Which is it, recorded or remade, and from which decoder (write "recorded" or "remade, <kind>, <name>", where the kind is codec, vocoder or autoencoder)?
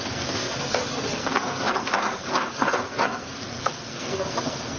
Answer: remade, codec, SNAC